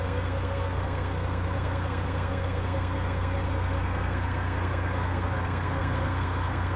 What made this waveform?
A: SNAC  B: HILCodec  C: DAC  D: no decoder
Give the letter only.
A